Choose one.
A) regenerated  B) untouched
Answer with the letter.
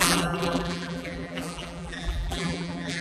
A